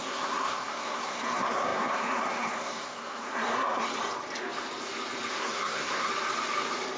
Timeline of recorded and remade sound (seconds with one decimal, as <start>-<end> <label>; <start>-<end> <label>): 0.0-3.9 remade; 3.9-5.3 recorded; 5.3-6.1 remade; 6.1-7.0 recorded